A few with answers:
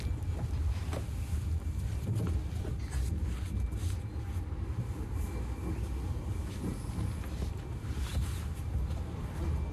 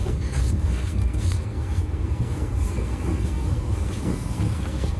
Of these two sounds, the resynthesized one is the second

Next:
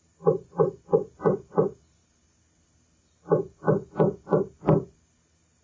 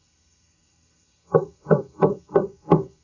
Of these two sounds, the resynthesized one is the second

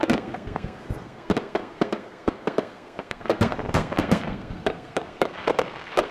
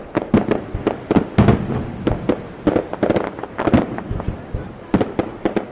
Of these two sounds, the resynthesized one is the first